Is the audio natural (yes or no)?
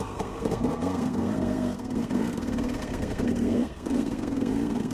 no